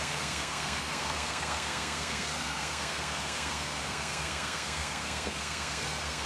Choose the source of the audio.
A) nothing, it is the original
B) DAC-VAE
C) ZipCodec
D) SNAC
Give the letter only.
D